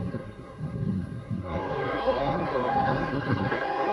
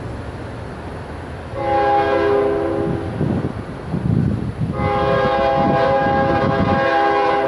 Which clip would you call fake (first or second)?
first